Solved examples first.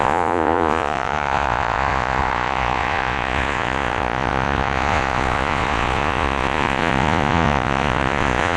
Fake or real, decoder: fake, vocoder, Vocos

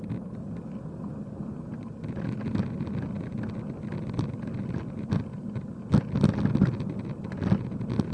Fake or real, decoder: real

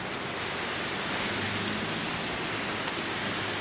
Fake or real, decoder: real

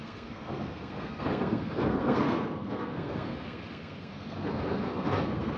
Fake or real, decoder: fake, codec, SNAC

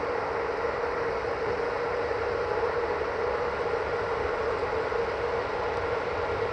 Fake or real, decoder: real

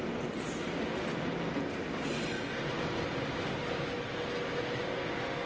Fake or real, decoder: real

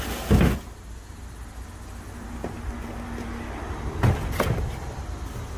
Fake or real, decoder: real